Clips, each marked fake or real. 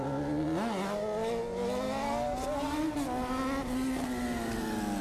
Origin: real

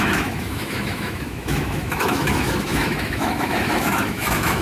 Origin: fake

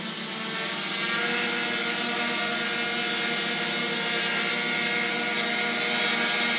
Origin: real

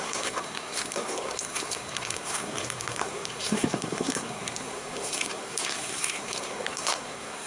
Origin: fake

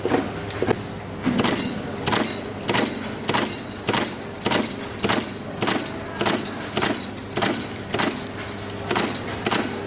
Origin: real